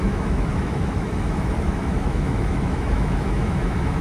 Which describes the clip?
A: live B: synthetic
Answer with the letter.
B